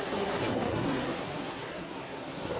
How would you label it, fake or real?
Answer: fake